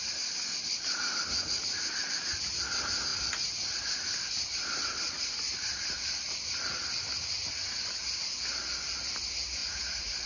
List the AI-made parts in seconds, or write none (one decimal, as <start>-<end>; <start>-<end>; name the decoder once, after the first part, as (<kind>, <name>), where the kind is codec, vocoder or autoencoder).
9.6-10.3 (vocoder, Vocos)